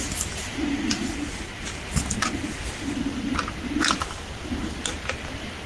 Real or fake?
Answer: real